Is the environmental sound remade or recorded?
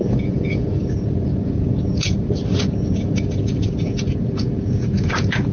remade